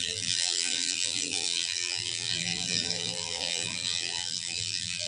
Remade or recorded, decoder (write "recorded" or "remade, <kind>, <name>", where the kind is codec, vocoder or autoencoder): remade, vocoder, BigVGAN v2